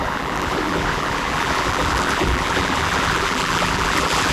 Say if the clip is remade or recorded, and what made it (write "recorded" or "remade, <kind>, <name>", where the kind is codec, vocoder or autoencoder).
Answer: remade, vocoder, BigVGAN v2